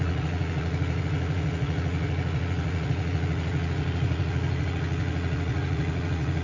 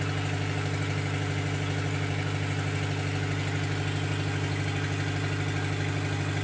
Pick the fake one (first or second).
first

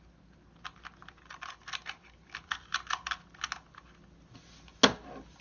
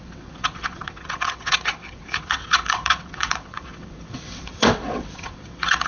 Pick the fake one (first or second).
second